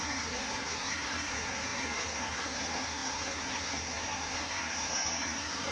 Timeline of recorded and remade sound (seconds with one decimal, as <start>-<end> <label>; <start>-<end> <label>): 0.0-5.7 remade